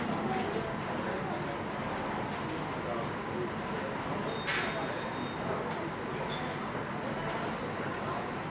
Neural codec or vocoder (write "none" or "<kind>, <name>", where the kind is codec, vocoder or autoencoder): none